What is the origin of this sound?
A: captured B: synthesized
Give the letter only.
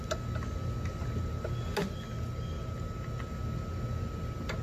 A